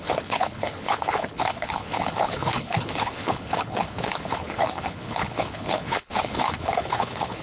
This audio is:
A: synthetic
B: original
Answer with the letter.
A